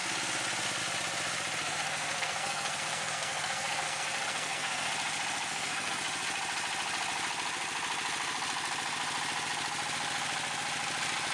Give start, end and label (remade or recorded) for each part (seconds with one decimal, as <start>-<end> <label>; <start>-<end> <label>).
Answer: 0.0-1.6 recorded; 1.6-4.9 remade; 4.9-5.5 recorded; 5.5-6.0 remade; 6.0-11.3 recorded

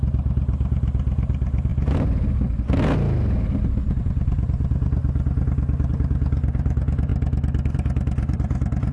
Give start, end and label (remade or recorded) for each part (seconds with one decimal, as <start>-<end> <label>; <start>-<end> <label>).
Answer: 0.0-1.7 remade; 1.7-4.0 recorded; 4.0-5.0 remade; 5.0-5.9 recorded; 5.9-7.1 remade; 7.1-7.7 recorded; 7.7-8.9 remade

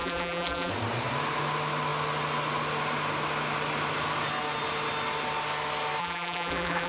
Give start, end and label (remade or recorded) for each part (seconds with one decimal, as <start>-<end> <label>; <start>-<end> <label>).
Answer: 0.0-0.7 remade; 0.7-6.0 recorded; 6.0-6.9 remade